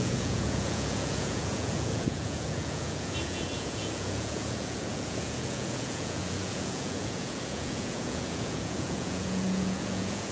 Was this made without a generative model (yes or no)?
no